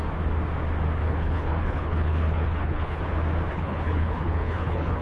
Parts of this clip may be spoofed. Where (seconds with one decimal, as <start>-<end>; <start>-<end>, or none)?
1.0-3.0; 3.5-5.0